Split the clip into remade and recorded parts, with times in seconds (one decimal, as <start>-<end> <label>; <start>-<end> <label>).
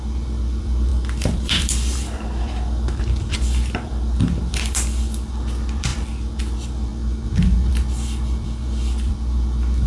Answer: 0.0-6.9 remade; 6.9-7.7 recorded; 7.7-9.9 remade